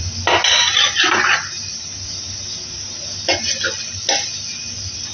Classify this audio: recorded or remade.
recorded